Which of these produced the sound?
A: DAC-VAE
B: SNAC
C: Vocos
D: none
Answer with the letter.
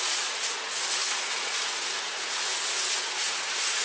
C